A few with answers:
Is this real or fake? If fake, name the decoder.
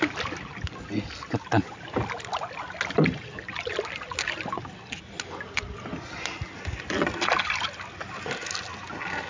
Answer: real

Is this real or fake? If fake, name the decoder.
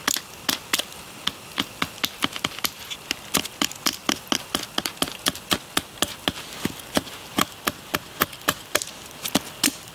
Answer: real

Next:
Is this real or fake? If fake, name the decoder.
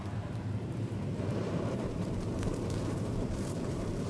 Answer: fake, vocoder, BigVGAN v2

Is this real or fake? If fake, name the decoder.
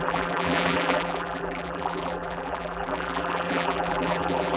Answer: fake, vocoder, BigVGAN v2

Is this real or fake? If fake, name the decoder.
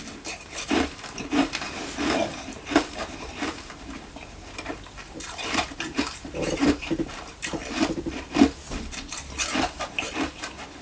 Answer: fake, vocoder, BigVGAN v2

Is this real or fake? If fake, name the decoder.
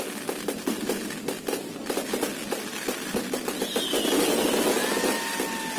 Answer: real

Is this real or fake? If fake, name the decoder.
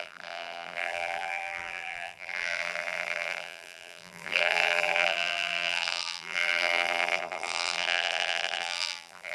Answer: fake, vocoder, BigVGAN v2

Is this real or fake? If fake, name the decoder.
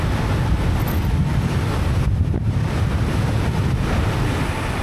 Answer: real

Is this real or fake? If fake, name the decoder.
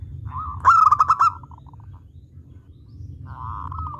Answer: real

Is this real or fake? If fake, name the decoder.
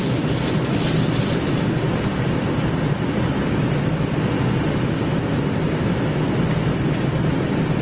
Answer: fake, vocoder, BigVGAN v2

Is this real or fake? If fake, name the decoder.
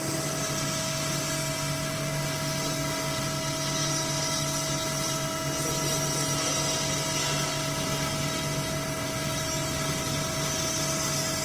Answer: real